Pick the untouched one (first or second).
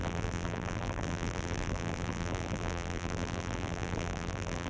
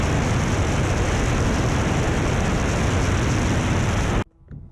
second